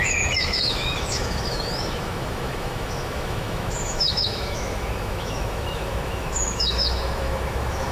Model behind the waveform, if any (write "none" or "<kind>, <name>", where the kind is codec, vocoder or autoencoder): autoencoder, DAC-VAE